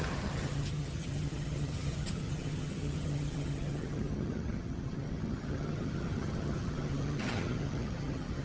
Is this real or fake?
fake